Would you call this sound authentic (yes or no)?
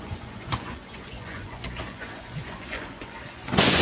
no